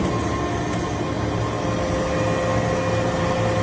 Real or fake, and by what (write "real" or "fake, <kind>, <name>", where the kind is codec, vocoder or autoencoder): real